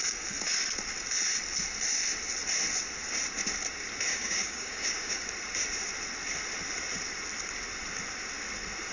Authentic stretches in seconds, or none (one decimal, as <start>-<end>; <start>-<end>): 0.0-4.1; 5.2-8.9